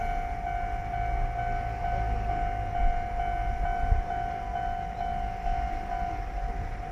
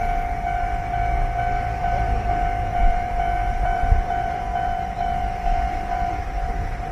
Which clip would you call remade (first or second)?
second